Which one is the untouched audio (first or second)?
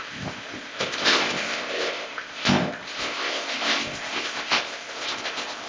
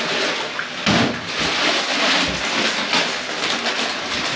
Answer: second